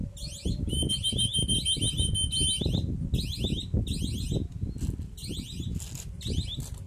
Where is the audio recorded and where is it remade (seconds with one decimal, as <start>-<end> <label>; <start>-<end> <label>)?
0.0-6.9 recorded